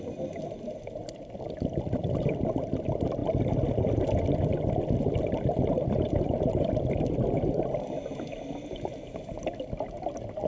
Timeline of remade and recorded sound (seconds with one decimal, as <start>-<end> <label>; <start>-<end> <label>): 0.0-10.5 recorded